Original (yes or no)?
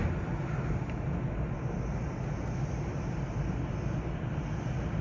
yes